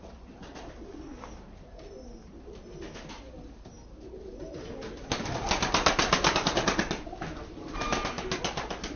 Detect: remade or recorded recorded